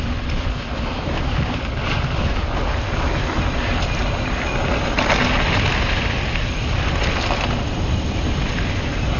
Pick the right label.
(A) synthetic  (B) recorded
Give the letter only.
B